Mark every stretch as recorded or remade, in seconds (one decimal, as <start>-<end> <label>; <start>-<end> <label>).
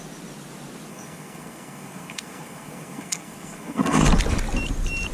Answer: 0.0-0.9 recorded; 0.9-4.0 remade; 4.0-5.1 recorded